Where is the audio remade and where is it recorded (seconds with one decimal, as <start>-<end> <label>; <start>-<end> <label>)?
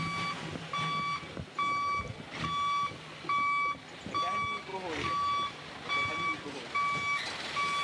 0.0-7.8 recorded